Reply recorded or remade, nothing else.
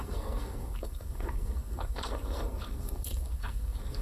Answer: remade